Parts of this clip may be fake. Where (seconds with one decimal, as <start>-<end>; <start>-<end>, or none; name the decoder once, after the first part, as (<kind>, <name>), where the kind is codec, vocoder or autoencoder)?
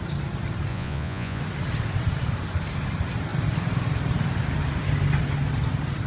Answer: 0.7-1.4 (vocoder, Vocos)